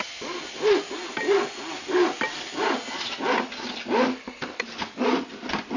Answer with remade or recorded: recorded